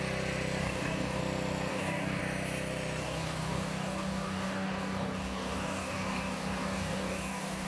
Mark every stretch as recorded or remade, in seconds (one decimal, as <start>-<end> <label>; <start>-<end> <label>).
0.0-0.6 recorded; 0.6-1.2 remade; 1.2-1.7 recorded; 1.7-2.2 remade; 2.2-3.0 recorded; 3.0-7.7 remade